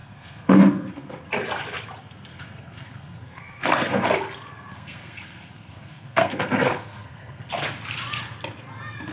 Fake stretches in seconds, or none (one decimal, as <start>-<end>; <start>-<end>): 0.0-1.2; 2.3-4.1; 4.7-7.5